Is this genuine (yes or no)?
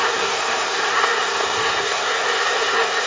no